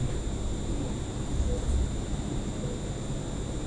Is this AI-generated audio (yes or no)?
no